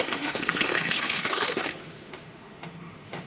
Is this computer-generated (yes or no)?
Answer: yes